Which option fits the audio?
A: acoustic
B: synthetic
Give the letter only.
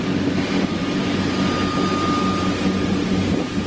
A